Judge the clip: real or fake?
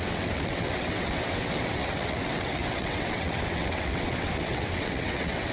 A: fake